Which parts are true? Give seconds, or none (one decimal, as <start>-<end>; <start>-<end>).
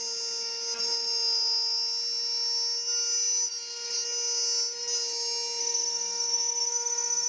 0.0-5.6